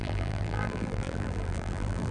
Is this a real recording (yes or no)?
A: no